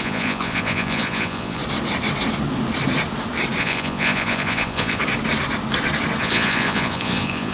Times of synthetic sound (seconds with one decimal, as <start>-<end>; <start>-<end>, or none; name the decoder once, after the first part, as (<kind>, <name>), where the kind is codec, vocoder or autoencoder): 0.0-1.6 (vocoder, Vocos); 3.6-5.0; 6.2-7.5